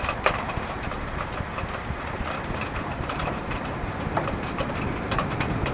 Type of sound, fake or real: fake